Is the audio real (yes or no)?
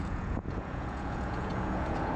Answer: no